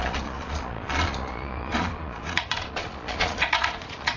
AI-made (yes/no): yes